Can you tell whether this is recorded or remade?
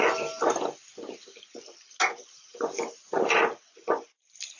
recorded